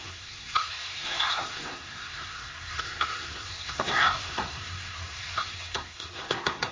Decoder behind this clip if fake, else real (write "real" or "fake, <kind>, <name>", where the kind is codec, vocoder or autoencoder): fake, codec, SNAC